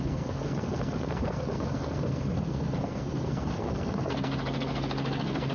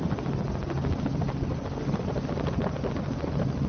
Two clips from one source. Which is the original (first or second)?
second